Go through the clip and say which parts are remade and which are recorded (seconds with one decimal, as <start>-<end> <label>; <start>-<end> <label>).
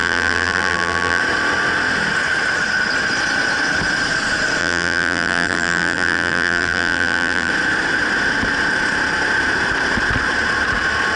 0.0-1.2 remade; 1.2-4.6 recorded; 4.6-7.5 remade; 7.5-11.2 recorded